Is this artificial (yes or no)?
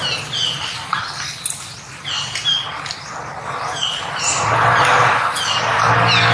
no